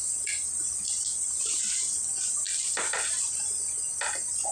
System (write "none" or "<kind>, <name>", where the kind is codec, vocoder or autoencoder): none